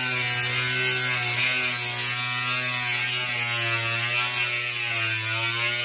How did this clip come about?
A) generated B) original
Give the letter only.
B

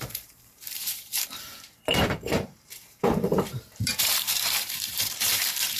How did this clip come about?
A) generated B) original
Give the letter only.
A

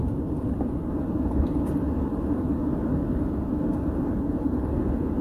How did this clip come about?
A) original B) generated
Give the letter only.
B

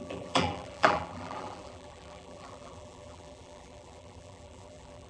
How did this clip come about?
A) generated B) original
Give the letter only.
A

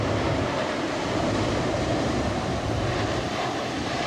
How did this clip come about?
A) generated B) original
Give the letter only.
A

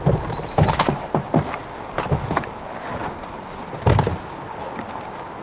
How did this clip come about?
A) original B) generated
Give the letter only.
A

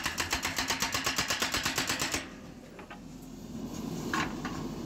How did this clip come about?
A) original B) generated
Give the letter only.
A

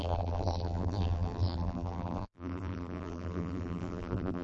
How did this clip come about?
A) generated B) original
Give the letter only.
A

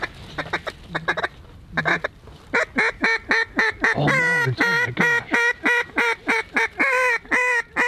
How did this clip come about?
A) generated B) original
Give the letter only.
B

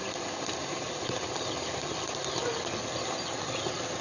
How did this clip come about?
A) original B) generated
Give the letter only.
B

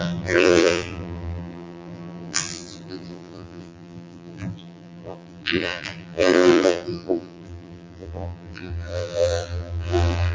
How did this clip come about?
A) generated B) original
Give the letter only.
A